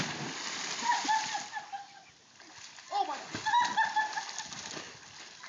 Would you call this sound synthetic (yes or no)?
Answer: no